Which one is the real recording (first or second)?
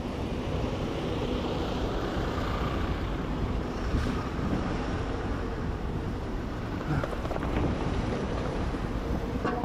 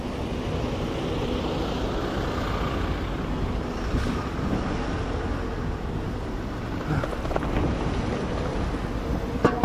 second